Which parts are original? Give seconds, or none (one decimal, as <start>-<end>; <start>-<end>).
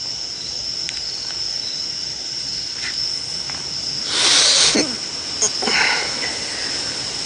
0.0-7.3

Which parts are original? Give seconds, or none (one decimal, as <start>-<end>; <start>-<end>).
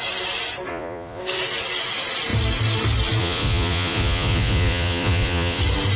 0.0-0.7; 1.2-3.2; 5.6-6.0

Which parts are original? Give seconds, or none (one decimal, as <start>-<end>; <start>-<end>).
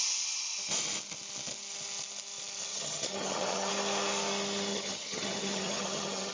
0.0-2.7; 3.7-4.7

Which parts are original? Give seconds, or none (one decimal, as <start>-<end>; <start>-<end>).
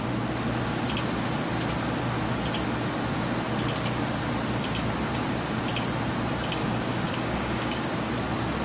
0.0-6.6; 8.1-8.6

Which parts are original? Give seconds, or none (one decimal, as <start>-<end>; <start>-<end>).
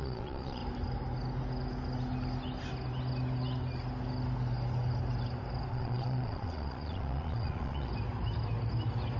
0.6-5.7; 7.9-9.2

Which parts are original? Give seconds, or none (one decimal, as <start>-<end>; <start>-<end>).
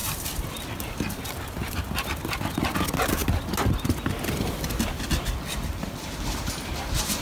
1.9-7.2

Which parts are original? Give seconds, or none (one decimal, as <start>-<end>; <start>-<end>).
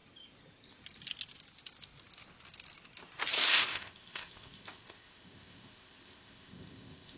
0.0-3.5